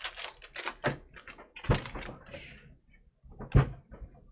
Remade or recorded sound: recorded